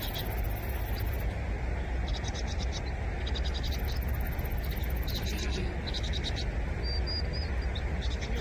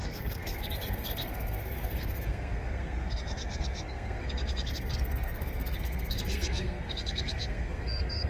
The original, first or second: first